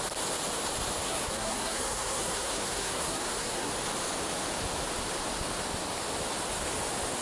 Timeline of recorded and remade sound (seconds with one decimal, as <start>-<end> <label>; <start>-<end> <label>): 0.0-1.0 recorded; 1.0-3.7 remade; 3.7-7.2 recorded